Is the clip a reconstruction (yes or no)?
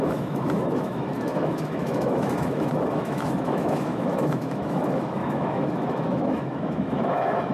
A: yes